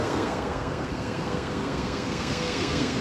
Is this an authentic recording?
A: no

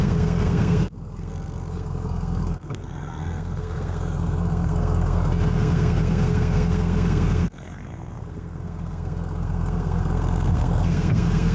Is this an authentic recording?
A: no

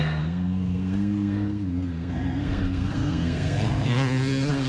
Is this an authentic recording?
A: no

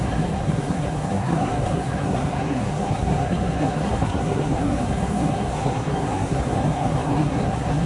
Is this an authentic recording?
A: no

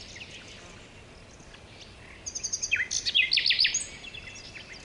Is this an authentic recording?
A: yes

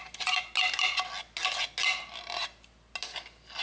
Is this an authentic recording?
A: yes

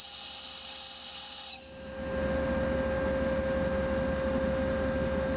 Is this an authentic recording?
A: yes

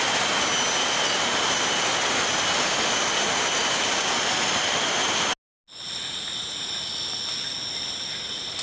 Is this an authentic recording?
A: yes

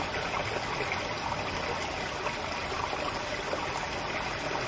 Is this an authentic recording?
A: yes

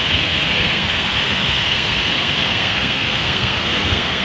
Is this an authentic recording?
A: no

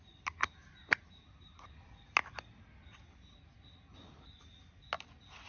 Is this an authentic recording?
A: yes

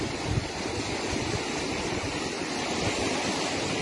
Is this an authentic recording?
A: yes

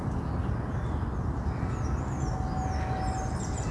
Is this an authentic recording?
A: yes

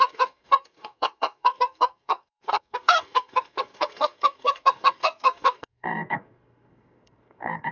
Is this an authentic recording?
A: no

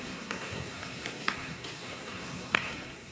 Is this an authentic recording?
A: no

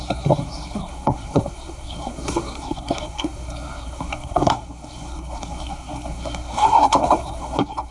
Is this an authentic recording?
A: no